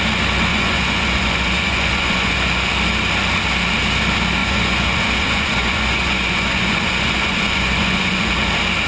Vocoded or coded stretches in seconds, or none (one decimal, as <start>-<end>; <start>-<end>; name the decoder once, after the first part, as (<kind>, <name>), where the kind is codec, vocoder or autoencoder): 0.5-2.7 (vocoder, Vocos); 4.4-8.3